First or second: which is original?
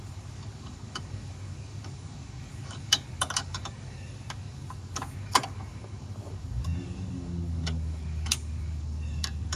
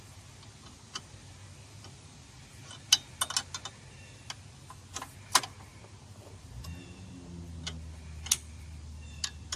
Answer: second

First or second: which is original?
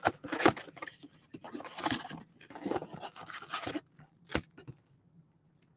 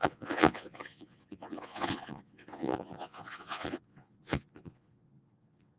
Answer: first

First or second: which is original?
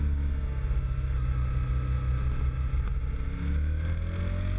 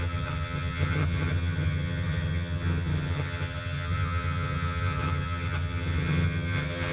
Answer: first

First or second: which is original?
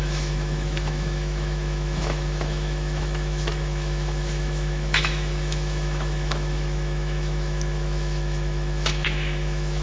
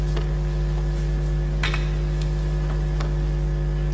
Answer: second